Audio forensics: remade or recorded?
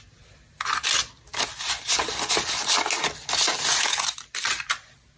recorded